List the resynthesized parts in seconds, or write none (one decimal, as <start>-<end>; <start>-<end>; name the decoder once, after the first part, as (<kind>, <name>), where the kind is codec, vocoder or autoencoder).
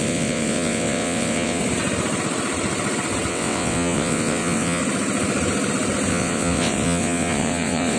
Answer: 0.0-1.6 (vocoder, WaveNeXt); 3.3-4.8; 6.1-8.0